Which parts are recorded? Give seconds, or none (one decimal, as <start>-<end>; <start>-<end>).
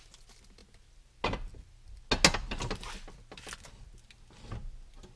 0.0-5.2